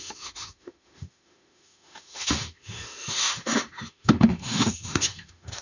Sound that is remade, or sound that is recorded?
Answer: remade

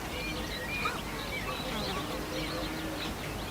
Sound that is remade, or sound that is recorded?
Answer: recorded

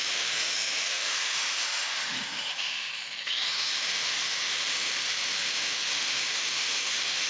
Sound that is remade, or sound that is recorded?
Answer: remade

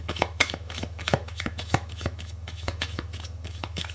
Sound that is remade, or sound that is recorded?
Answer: remade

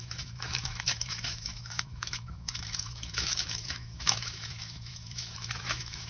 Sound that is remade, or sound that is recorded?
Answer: remade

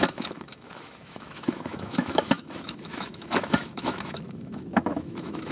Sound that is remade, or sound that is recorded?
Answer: remade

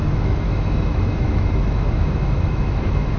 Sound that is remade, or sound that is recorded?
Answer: remade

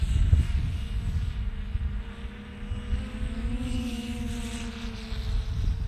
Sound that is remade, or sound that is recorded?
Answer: recorded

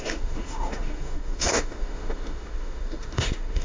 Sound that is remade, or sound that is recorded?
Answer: remade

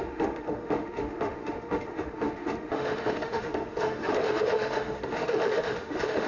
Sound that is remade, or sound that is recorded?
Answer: remade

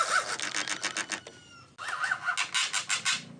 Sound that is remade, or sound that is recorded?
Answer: recorded